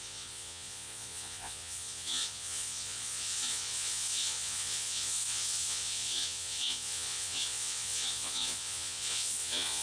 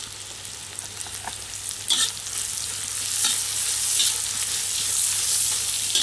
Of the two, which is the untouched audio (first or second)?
second